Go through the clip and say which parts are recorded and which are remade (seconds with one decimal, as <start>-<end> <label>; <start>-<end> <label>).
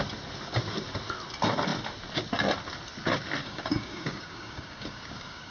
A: 0.0-3.4 recorded; 3.4-5.5 remade